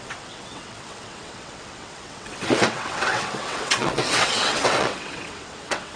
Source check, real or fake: fake